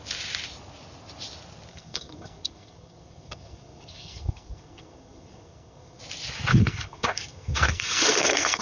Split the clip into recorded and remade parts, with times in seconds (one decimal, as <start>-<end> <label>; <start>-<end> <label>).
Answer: 0.0-1.7 recorded; 1.7-6.0 remade; 6.0-6.5 recorded; 6.5-8.6 remade